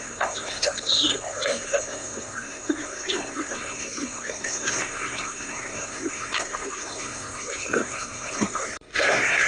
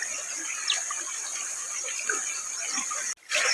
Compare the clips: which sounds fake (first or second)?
first